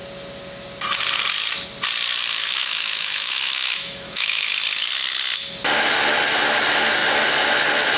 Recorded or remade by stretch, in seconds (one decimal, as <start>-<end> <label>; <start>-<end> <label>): 0.0-2.2 recorded; 2.2-4.5 remade; 4.5-8.0 recorded